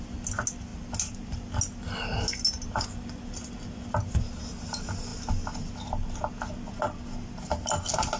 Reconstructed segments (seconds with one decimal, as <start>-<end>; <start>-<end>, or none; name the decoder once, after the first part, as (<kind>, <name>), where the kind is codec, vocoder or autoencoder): none